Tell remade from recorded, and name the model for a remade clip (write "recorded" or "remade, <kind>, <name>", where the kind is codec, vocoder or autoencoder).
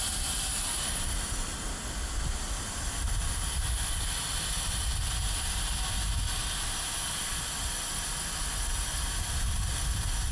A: recorded